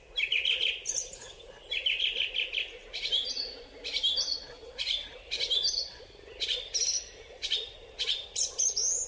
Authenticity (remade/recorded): recorded